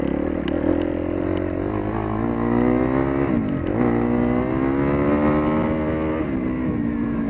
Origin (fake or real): real